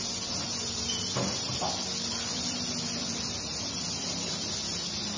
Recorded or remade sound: recorded